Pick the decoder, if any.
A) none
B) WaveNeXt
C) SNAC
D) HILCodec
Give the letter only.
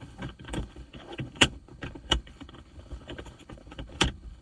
D